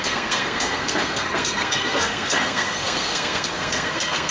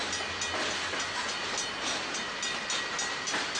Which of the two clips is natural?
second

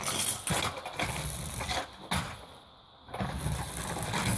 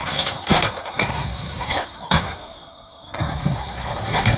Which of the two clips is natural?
first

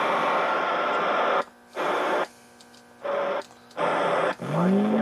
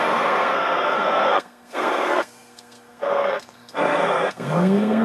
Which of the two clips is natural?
first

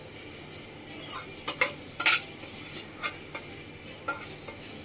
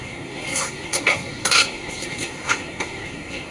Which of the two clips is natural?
first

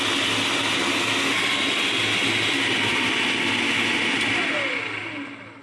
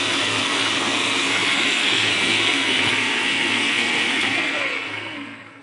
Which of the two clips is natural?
first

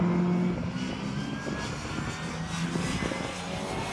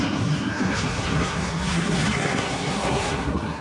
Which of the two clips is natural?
first